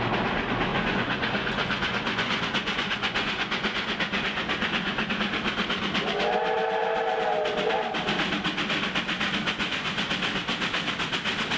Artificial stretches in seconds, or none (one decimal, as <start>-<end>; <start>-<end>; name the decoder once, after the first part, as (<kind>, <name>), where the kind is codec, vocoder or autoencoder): 0.7-5.1 (vocoder, Vocos); 9.4-10.1